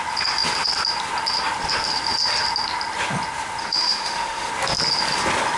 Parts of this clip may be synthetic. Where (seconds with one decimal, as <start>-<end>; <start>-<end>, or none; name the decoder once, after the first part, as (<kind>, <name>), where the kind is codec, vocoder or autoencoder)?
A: 3.6-4.5 (autoencoder, DAC-VAE)